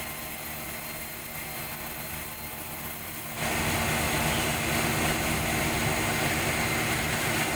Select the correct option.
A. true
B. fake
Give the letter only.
A